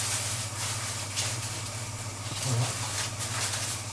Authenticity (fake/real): real